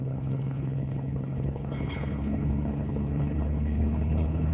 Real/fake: fake